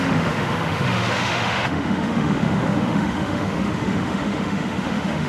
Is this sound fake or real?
fake